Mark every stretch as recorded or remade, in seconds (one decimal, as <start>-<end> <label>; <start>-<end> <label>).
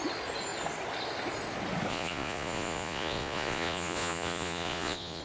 0.0-1.9 recorded; 1.9-5.2 remade